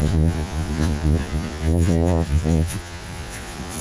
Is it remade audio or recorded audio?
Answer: remade